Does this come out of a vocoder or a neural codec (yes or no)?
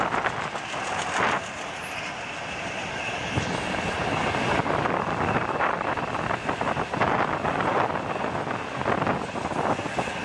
no